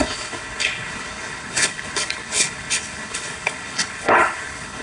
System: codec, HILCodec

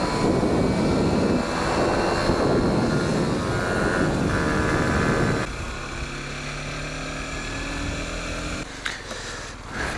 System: none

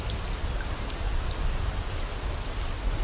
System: none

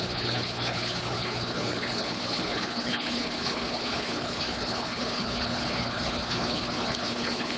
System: codec, HILCodec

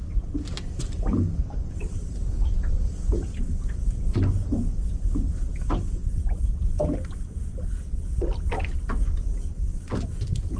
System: none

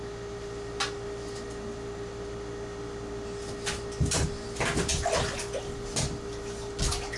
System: none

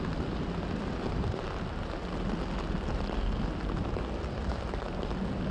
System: none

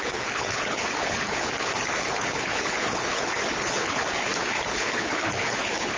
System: codec, HILCodec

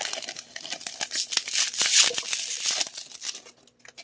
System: none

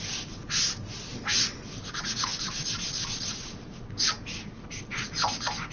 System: none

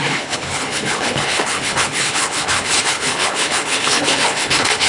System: codec, HILCodec